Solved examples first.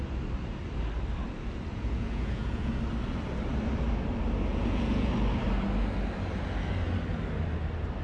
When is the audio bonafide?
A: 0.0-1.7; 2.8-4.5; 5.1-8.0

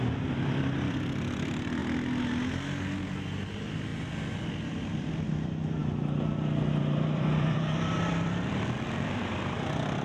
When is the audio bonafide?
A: 1.8-3.0; 3.9-4.9; 5.8-6.7

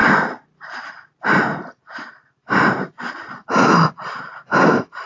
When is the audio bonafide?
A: 0.0-5.1

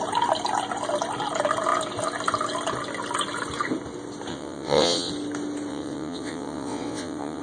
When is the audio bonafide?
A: 0.0-4.3; 5.1-5.7

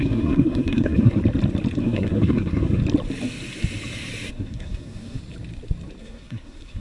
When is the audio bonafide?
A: 1.2-1.8; 2.8-4.3; 5.2-6.0

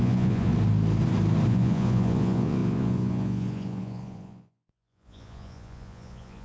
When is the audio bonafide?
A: 0.5-1.5

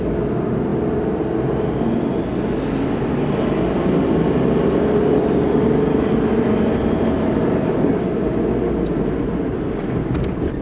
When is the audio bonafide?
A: 0.0-10.6

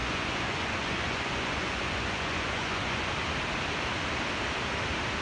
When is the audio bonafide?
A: 3.1-5.2